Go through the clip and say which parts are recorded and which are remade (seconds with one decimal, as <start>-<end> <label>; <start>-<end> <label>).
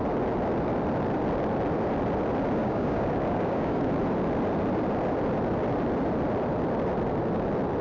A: 0.0-2.6 recorded; 2.6-3.9 remade; 3.9-7.8 recorded